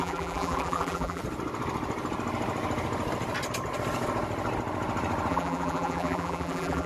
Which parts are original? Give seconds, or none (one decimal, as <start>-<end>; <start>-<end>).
1.2-5.3